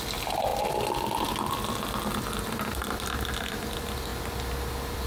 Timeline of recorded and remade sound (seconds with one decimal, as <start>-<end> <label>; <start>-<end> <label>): 0.0-0.5 recorded; 0.5-3.6 remade; 3.6-4.1 recorded; 4.1-5.1 remade